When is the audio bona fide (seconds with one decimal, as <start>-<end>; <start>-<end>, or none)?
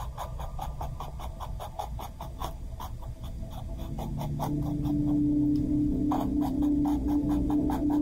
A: 0.0-8.0